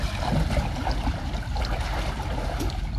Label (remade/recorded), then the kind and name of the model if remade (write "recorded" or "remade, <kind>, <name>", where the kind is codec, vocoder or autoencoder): recorded